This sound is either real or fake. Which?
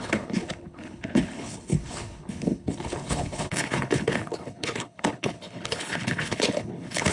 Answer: fake